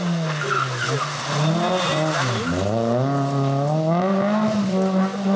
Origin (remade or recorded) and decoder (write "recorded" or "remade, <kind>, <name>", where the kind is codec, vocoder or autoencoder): recorded